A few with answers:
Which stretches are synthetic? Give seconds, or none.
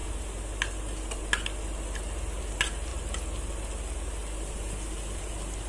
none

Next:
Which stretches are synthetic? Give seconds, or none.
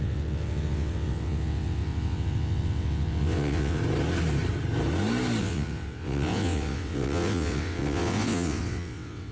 0.0-3.8; 5.4-9.3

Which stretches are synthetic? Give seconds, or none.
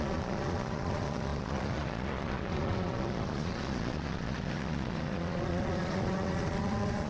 0.0-7.1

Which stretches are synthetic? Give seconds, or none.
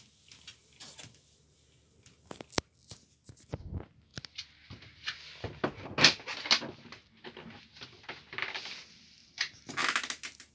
none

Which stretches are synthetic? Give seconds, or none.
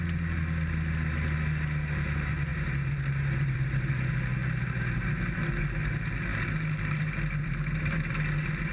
2.5-3.9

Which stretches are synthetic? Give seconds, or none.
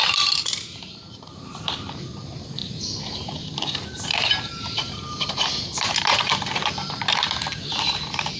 0.0-8.4